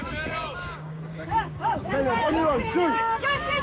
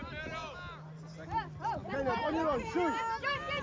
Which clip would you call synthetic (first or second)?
first